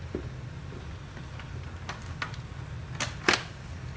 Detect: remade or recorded recorded